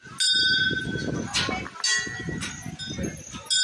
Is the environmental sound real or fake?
real